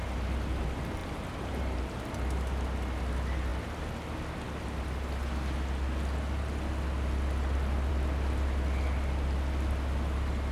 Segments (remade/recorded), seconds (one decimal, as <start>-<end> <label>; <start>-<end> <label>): 0.0-1.0 recorded; 1.0-2.0 remade; 2.0-10.5 recorded